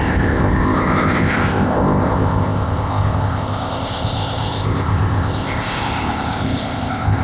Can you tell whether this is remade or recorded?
remade